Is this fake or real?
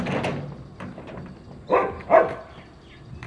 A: real